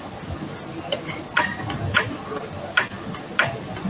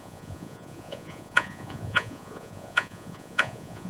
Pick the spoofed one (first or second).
second